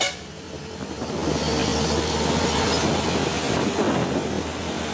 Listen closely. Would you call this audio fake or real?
real